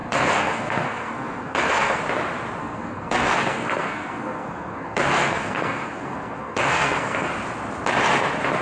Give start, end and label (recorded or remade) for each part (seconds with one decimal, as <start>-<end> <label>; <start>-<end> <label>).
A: 0.0-2.0 remade; 2.0-2.6 recorded; 2.6-7.3 remade; 7.3-8.6 recorded